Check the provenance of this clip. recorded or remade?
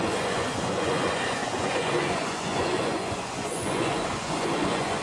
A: remade